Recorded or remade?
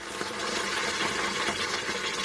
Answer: recorded